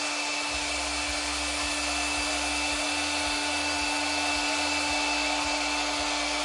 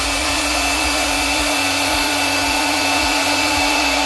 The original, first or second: first